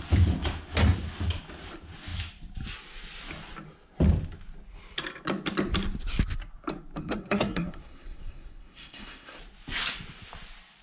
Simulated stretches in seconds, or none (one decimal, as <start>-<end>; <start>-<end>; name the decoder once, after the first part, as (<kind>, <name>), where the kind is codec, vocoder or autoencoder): 7.0-9.4 (codec, SNAC)